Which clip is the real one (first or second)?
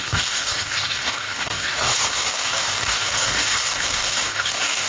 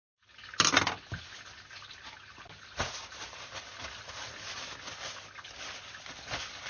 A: second